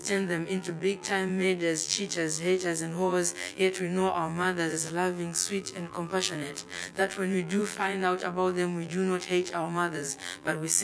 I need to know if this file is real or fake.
fake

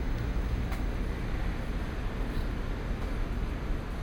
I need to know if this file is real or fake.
real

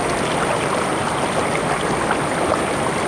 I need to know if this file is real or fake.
real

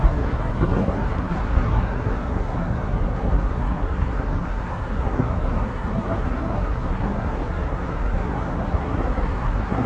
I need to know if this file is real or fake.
fake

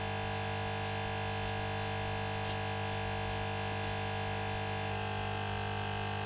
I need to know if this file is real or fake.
real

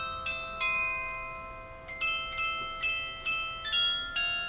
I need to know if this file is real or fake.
real